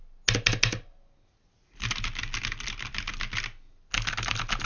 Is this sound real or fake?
real